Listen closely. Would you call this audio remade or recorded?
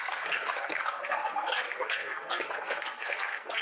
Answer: remade